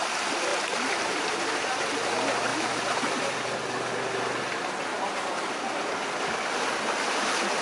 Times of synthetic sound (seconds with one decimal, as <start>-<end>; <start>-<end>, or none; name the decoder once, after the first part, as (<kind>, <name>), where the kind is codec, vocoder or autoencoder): 0.5-1.2 (vocoder, BigVGAN v2); 4.9-5.5